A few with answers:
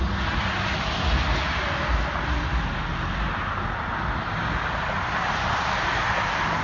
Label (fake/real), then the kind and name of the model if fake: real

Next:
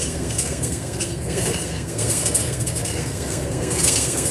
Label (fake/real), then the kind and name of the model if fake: fake, codec, SNAC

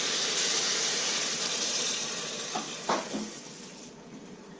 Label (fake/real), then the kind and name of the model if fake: fake, vocoder, BigVGAN v2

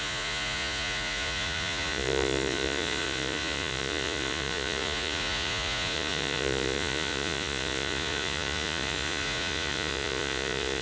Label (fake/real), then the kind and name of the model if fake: fake, vocoder, Vocos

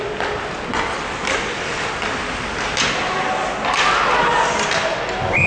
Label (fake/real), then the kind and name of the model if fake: real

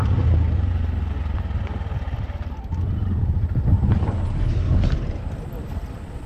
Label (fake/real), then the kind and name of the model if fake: real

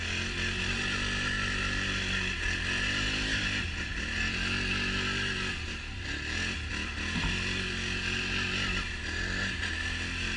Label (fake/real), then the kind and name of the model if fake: real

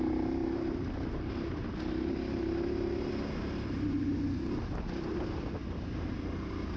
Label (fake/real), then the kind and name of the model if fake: real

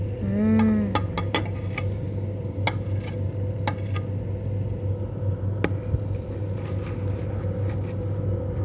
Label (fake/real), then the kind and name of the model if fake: real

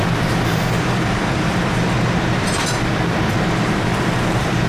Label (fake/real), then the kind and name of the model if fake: fake, vocoder, BigVGAN v2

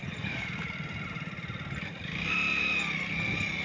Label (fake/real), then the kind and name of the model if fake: real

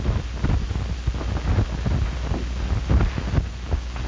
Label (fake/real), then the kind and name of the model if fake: real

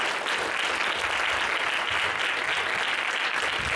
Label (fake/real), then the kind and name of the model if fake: real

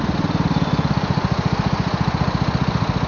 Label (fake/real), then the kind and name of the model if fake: real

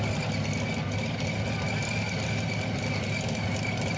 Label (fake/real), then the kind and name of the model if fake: real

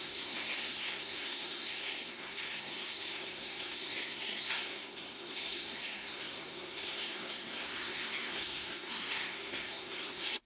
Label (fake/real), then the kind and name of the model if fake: fake, codec, SNAC